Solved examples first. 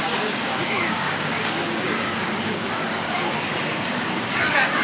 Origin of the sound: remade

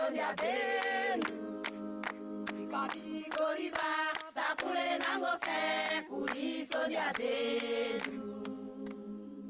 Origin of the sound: recorded